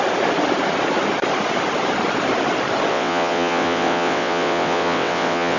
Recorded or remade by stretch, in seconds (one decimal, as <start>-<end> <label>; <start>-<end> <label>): 0.0-2.9 recorded; 2.9-5.6 remade